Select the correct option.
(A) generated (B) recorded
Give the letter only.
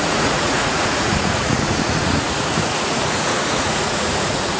A